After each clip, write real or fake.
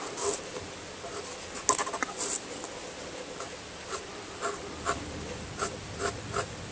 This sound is real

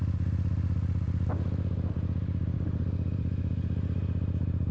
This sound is real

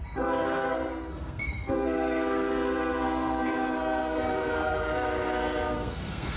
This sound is fake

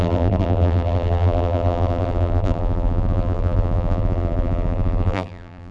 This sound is fake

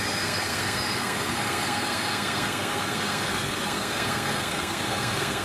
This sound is fake